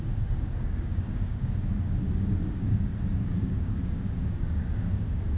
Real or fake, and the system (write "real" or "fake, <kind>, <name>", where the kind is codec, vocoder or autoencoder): fake, codec, DAC